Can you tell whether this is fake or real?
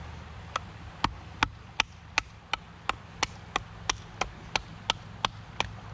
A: real